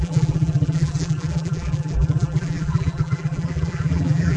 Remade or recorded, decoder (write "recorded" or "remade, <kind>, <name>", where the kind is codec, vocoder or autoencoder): remade, vocoder, BigVGAN v2